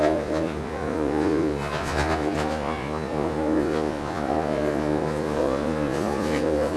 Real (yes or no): no